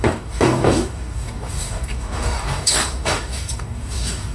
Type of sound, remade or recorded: remade